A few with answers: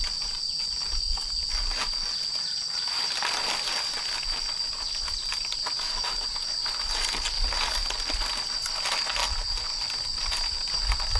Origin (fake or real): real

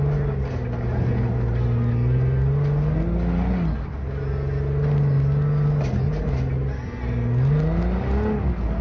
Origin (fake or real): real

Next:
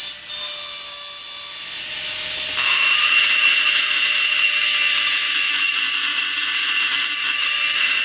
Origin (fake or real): real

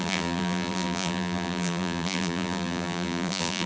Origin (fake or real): fake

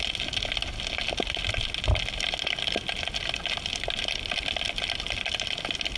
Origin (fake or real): real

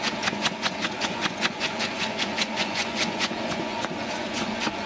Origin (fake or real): fake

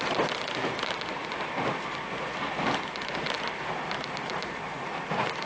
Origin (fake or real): real